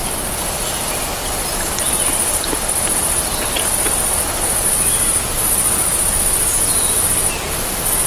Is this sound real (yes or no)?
yes